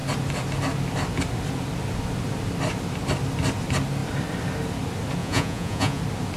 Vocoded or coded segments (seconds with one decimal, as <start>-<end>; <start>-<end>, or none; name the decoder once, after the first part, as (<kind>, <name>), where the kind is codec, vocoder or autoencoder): 5.2-6.0 (vocoder, Vocos)